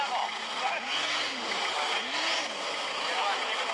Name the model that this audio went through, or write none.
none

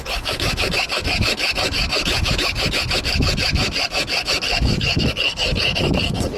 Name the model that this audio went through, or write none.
autoencoder, DAC-VAE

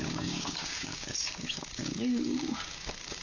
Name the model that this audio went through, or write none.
codec, DAC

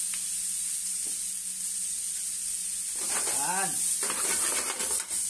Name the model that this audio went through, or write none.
none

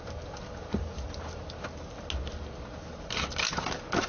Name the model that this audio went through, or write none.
none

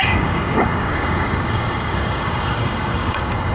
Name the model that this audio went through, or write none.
codec, DAC